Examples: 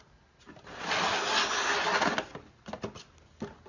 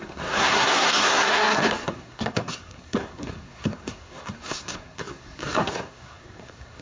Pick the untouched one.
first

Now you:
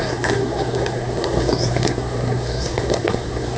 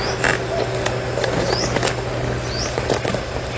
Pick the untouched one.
second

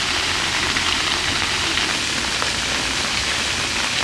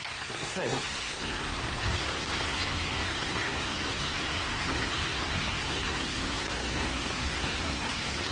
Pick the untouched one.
first